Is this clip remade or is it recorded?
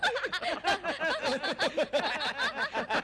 recorded